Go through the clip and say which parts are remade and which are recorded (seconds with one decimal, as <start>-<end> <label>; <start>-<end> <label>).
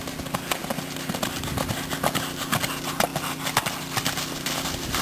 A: 0.0-0.6 recorded; 0.6-2.6 remade; 2.6-3.1 recorded; 3.1-5.0 remade